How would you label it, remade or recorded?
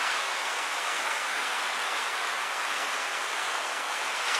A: remade